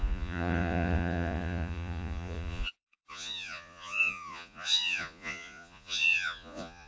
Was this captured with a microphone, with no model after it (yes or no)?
no